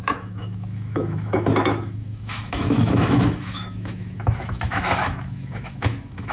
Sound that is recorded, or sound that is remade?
remade